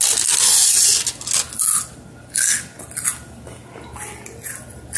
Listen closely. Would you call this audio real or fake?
real